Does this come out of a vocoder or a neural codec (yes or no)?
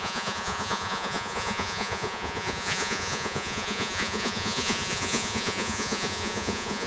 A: yes